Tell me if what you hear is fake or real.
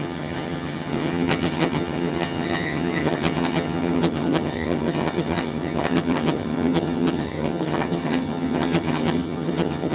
fake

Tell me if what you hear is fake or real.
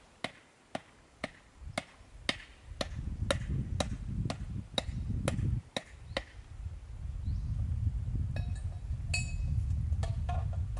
real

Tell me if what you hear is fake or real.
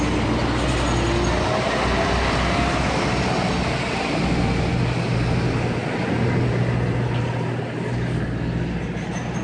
real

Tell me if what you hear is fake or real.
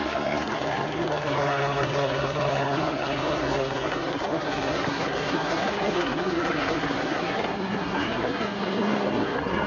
fake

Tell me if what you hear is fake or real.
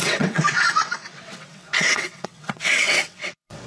fake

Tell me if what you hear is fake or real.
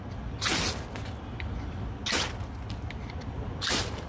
real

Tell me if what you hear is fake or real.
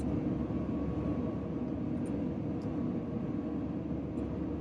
real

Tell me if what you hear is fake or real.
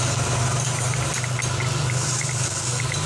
real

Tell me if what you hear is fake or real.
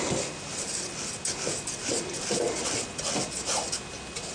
real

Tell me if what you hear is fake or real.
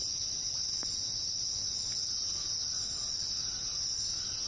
real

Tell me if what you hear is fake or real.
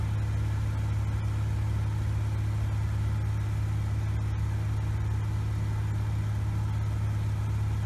real